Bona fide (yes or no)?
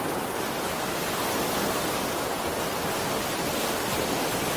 yes